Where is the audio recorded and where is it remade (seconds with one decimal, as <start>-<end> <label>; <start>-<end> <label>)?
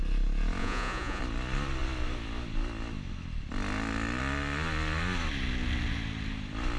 0.0-0.6 recorded; 0.6-1.2 remade; 1.2-6.8 recorded